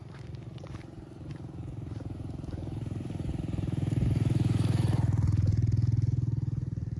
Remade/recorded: remade